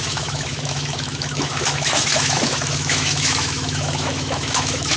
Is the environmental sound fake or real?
fake